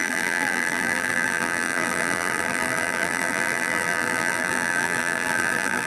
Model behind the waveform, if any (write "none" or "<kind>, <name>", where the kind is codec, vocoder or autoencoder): vocoder, BigVGAN v2